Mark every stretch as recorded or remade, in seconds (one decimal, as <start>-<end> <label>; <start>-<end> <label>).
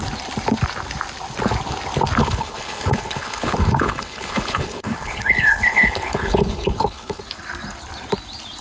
0.0-2.2 recorded; 2.2-7.2 remade; 7.2-8.6 recorded